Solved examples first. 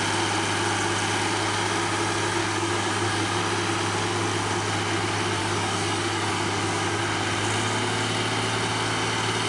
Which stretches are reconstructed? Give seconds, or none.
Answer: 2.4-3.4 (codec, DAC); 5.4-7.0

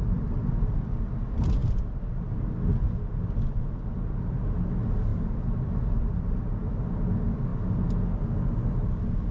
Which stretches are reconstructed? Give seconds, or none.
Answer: 0.0-1.6 (vocoder, BigVGAN v2); 3.9-7.5; 8.4-9.3

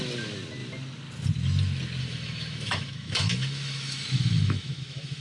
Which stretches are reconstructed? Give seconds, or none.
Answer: 2.0-5.2 (autoencoder, DAC-VAE)

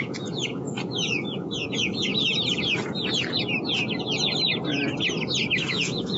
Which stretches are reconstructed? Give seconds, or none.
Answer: 0.0-2.1 (vocoder, Vocos); 5.7-6.2

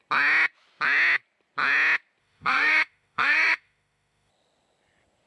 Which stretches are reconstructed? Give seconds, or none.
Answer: 2.2-4.3 (autoencoder, DAC-VAE)

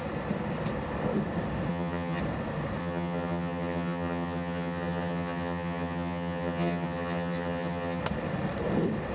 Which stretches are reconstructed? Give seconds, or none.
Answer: 1.7-2.2 (vocoder, HiFi-GAN); 2.8-8.0

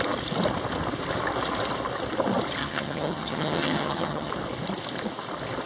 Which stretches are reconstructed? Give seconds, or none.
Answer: 2.6-4.3 (vocoder, HiFi-GAN)